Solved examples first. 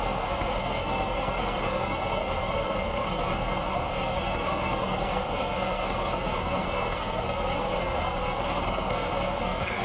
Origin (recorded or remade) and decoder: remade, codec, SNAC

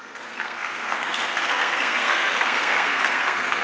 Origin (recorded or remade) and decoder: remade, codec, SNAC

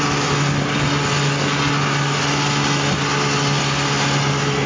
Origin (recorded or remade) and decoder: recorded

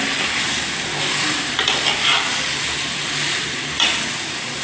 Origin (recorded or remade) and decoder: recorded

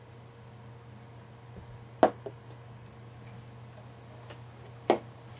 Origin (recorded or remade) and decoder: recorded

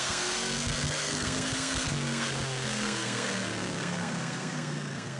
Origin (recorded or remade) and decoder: remade, codec, SNAC